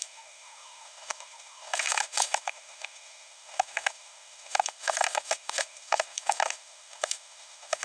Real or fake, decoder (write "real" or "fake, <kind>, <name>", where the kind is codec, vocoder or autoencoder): fake, autoencoder, DAC-VAE